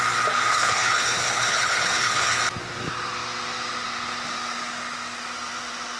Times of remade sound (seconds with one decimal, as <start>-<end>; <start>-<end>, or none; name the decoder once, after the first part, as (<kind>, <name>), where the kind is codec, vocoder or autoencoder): 0.5-2.4 (codec, HILCodec)